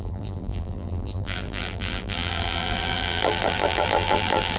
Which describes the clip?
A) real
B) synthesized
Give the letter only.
B